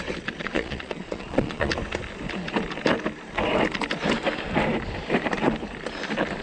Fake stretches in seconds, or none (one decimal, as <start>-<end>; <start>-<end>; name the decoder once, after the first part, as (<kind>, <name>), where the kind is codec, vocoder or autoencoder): 0.4-1.7 (vocoder, Vocos)